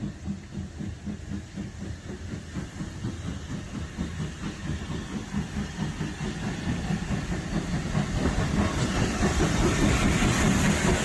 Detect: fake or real real